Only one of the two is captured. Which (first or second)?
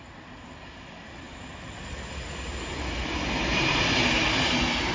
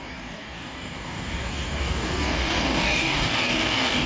first